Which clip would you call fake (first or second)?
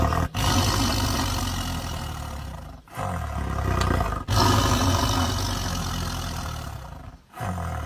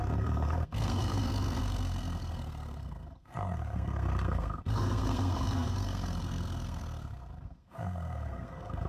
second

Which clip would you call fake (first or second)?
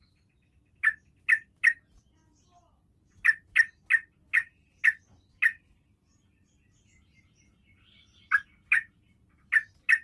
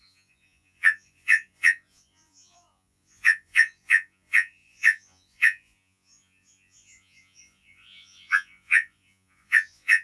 second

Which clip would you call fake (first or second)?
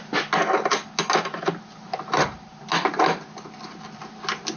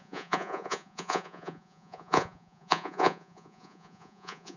second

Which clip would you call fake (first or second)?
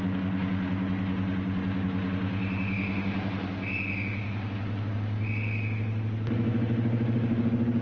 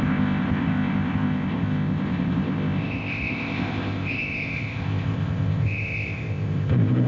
second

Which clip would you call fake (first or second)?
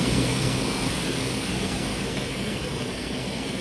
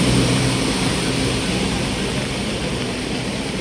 first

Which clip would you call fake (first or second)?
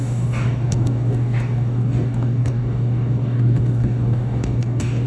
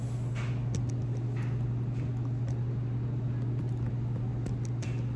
first